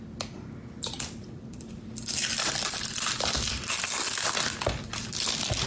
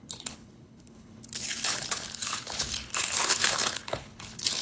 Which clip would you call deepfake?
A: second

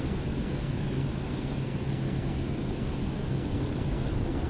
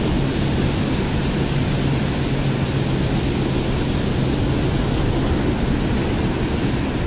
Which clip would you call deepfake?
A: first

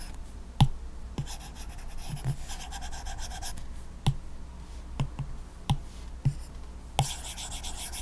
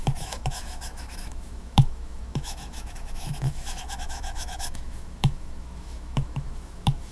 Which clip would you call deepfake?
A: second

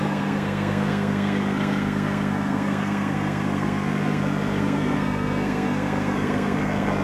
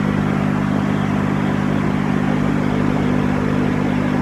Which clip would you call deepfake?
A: first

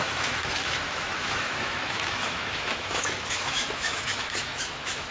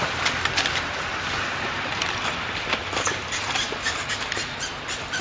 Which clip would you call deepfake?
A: first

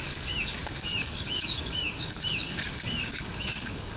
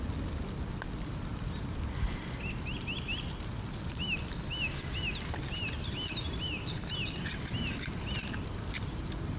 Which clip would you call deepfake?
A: first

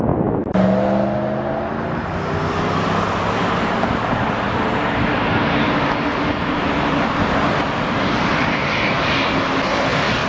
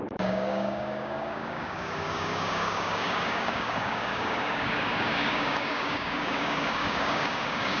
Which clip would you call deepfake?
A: second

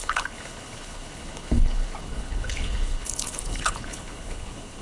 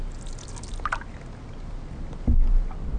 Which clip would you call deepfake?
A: first